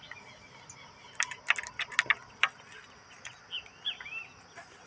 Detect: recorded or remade recorded